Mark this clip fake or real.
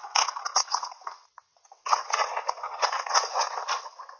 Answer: fake